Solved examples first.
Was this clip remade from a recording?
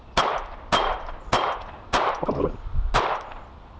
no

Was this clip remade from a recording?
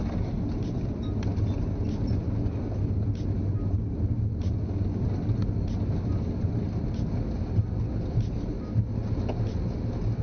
no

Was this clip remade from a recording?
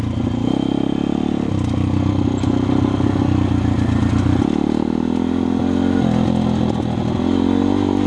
no